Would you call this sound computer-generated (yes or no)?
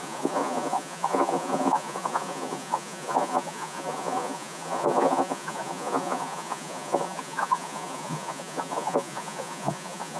yes